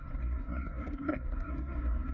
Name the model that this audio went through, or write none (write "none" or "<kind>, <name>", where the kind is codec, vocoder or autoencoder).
codec, SNAC